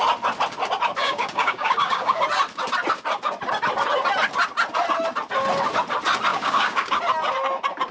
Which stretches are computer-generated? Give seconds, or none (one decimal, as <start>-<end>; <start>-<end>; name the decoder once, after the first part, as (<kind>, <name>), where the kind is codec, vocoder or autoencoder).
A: 1.0-2.2 (codec, DAC); 6.3-7.0